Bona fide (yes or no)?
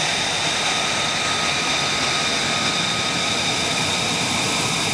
yes